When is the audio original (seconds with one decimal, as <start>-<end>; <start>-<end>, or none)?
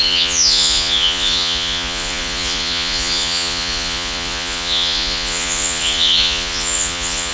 none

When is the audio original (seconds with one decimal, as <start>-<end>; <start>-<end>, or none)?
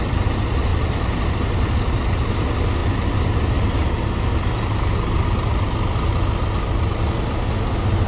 0.0-8.1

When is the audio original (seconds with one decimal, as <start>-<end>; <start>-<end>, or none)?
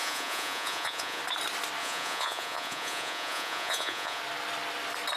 1.2-1.8; 4.2-5.2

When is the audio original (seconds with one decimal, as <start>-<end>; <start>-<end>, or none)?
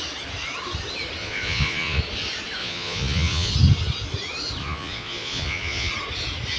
0.0-1.2; 2.0-2.6; 3.5-4.6; 5.9-6.6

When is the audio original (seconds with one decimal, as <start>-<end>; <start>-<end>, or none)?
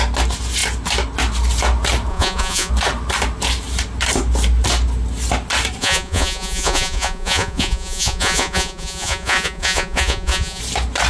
0.0-2.1; 2.7-5.8; 10.6-11.1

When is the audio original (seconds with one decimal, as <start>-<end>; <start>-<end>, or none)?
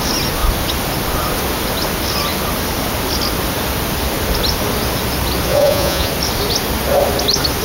0.0-5.5; 6.1-7.6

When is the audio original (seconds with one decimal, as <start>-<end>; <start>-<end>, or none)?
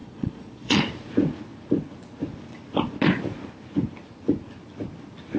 0.8-5.4